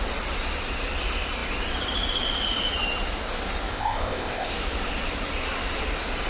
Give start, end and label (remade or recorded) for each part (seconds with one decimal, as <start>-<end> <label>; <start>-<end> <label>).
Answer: 0.0-3.7 recorded; 3.7-4.5 remade; 4.5-6.3 recorded